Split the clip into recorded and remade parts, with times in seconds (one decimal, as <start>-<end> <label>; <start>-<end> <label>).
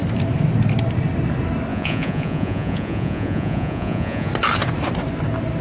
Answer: 0.0-1.7 recorded; 1.7-4.3 remade; 4.3-5.6 recorded